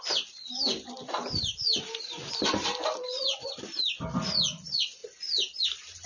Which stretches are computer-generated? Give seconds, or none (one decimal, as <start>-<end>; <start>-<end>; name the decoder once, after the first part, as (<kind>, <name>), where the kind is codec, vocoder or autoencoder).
0.7-4.4 (vocoder, BigVGAN v2)